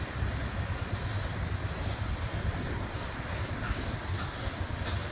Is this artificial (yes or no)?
no